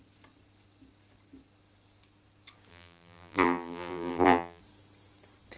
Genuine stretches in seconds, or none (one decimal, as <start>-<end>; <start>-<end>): 0.0-2.7; 4.6-5.6